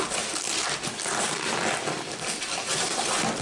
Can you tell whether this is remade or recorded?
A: recorded